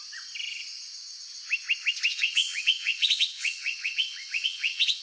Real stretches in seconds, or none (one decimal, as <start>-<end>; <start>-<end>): 0.0-2.1